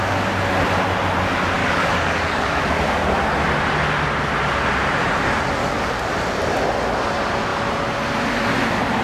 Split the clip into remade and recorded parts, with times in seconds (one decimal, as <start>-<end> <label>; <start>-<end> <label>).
0.0-1.6 recorded; 1.6-3.1 remade; 3.1-5.6 recorded; 5.6-6.1 remade; 6.1-9.0 recorded